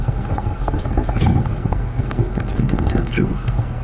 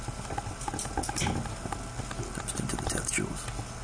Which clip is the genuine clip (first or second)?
second